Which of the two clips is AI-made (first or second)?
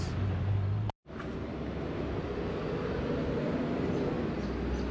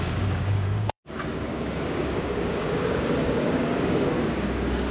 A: second